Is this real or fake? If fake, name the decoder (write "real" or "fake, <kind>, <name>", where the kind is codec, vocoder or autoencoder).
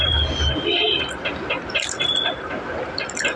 real